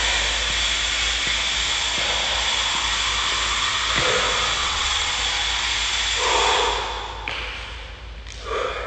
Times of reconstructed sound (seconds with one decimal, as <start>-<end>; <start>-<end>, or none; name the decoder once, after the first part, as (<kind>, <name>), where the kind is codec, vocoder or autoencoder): 4.6-5.1 (vocoder, WaveNeXt)